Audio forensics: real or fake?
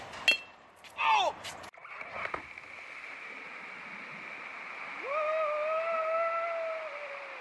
real